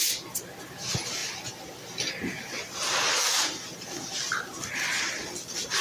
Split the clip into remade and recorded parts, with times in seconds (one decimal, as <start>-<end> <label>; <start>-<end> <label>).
0.0-5.8 recorded